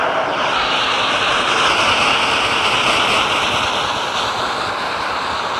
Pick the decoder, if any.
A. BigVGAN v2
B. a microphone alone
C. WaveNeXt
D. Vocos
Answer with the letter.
B